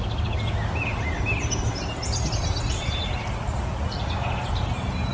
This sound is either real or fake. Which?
real